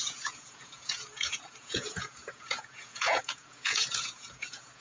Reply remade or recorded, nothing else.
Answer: remade